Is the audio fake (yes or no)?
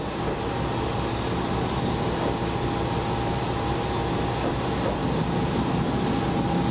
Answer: no